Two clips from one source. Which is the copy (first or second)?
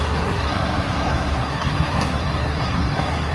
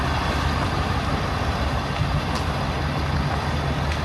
first